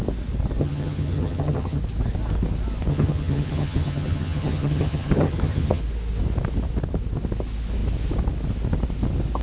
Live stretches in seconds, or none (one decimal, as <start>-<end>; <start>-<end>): 0.0-0.6; 1.8-2.9; 5.8-9.4